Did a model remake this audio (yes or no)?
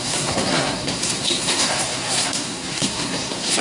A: yes